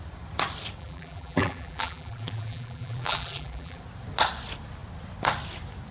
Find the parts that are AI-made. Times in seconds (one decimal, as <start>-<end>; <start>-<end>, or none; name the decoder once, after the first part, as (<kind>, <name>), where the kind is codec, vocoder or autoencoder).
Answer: 0.8-3.8 (vocoder, BigVGAN v2)